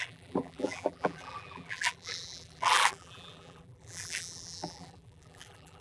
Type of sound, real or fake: fake